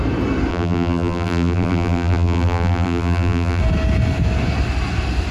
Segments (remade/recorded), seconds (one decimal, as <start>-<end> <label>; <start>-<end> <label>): 0.0-0.5 recorded; 0.5-3.6 remade; 3.6-5.3 recorded